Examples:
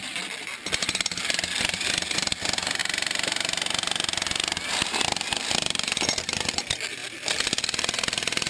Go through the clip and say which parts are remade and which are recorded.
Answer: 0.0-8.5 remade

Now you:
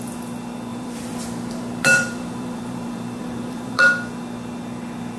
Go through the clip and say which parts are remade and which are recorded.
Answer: 0.0-0.7 recorded; 0.7-3.8 remade; 3.8-5.2 recorded